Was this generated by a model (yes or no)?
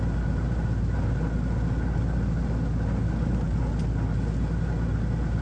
no